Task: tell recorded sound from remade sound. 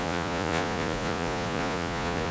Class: remade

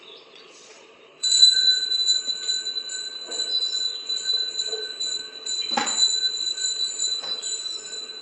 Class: remade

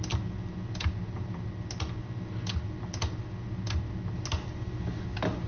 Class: recorded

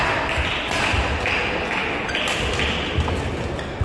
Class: recorded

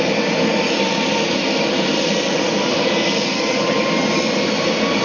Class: recorded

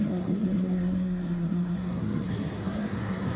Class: remade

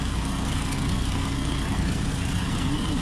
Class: remade